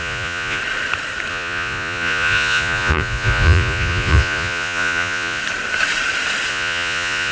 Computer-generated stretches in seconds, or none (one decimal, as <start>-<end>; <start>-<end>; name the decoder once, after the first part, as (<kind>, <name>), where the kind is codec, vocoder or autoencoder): 0.0-0.6 (vocoder, Vocos); 1.3-5.4; 6.5-7.3